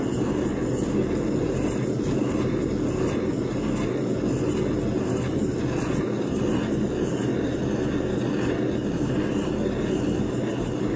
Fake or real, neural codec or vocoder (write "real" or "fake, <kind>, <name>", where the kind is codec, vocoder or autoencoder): real